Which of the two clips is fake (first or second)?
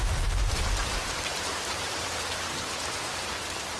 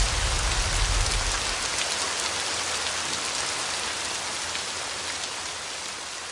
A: first